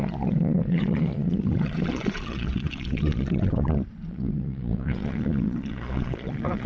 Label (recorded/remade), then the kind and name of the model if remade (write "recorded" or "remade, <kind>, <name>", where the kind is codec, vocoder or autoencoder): remade, vocoder, Vocos